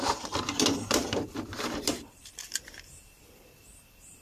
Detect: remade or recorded remade